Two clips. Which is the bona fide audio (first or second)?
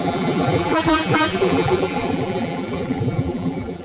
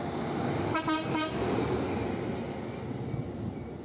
second